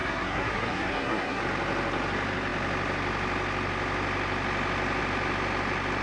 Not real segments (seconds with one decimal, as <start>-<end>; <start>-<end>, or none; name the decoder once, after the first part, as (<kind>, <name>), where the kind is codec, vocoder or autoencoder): 0.0-1.4 (codec, SNAC)